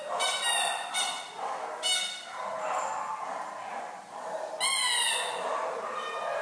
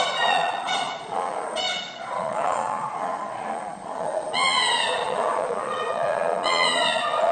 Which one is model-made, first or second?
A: second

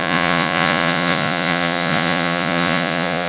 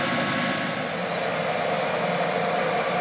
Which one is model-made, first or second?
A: first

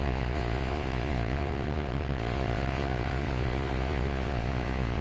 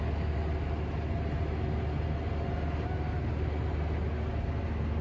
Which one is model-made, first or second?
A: first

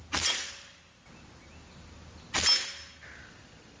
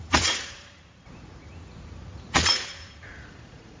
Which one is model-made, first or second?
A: second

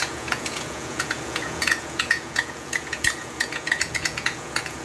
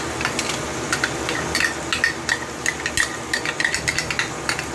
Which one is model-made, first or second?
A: first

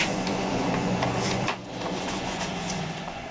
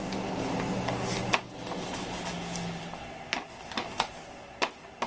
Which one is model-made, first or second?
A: first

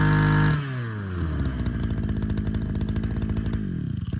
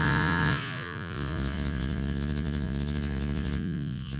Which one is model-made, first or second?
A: second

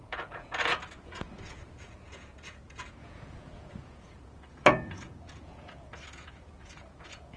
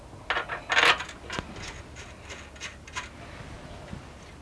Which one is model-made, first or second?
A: first